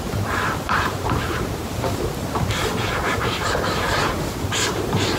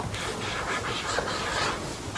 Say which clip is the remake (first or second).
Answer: first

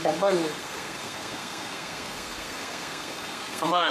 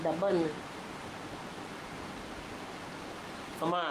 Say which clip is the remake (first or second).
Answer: first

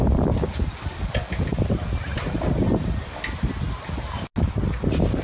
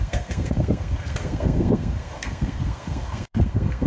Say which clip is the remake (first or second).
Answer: second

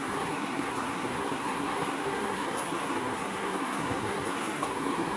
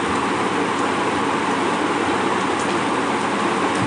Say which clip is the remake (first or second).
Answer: first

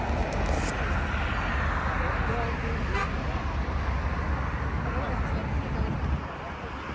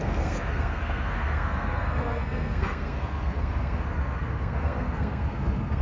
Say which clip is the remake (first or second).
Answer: second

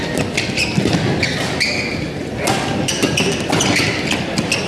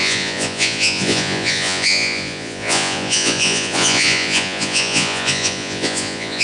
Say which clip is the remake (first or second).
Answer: second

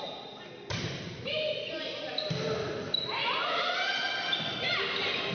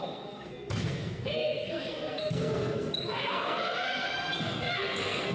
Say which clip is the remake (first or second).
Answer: second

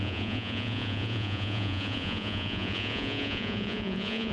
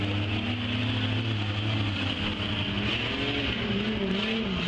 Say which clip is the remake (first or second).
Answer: first